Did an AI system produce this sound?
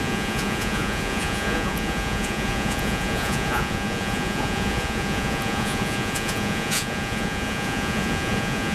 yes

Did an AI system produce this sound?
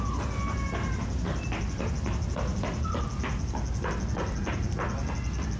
no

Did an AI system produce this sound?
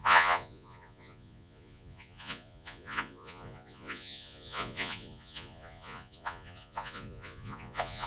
yes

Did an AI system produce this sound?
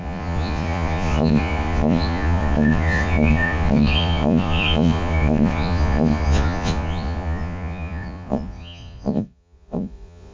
yes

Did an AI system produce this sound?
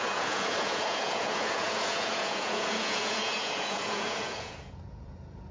yes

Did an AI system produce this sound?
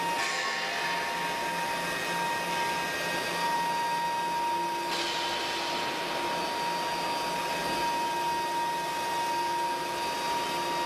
no